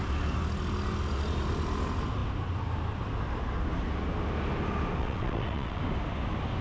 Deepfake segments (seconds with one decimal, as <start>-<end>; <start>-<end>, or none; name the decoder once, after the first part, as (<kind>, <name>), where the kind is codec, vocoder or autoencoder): 5.0-5.8 (vocoder, WaveNeXt)